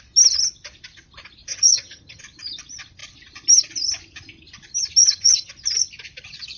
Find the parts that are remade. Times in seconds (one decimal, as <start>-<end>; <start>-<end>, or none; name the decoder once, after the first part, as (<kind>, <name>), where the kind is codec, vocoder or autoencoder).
1.5-2.2 (vocoder, HiFi-GAN); 5.0-5.5